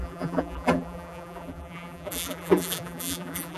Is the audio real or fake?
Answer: fake